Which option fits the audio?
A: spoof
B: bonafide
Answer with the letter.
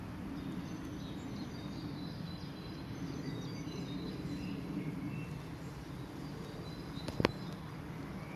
B